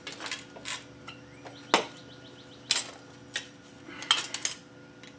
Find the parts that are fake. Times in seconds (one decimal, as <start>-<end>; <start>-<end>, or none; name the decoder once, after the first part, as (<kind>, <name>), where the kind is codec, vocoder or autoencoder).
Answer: none